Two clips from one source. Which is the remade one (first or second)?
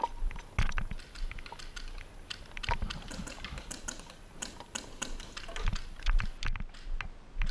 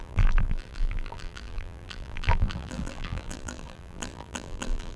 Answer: second